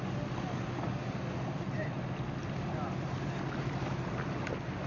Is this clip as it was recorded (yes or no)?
yes